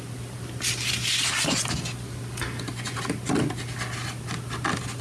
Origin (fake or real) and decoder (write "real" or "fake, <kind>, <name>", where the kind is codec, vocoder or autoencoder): real